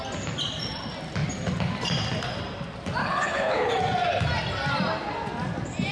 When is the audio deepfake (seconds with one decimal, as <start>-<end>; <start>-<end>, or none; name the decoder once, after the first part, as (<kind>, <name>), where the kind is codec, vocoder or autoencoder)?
3.0-3.7 (codec, HILCodec)